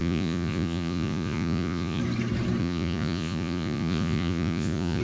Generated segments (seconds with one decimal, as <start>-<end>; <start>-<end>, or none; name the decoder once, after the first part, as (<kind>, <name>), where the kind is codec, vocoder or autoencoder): 0.0-2.0 (vocoder, Vocos); 2.6-5.0